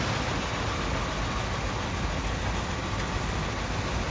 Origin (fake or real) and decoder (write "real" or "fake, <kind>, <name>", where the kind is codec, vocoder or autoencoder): real